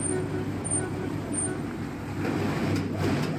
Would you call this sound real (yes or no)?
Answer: yes